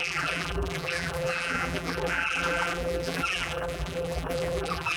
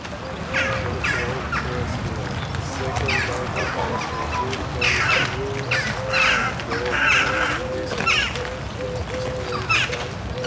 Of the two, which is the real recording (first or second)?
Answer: second